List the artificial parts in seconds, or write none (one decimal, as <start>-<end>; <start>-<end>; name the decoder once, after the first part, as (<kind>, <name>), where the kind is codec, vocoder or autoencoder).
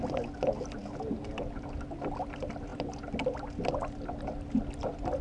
0.8-1.4 (vocoder, BigVGAN v2)